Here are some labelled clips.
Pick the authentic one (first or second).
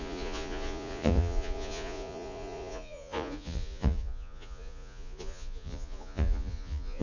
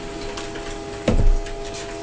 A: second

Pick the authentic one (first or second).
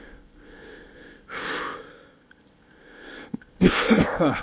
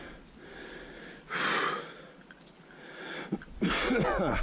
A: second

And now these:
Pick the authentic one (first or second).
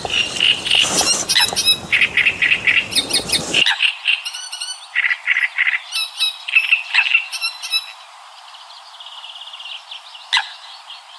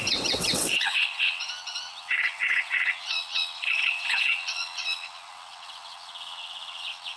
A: first